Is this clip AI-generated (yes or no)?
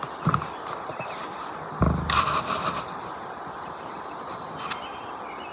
no